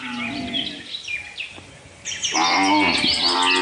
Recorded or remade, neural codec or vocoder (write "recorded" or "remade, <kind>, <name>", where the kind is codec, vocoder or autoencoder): recorded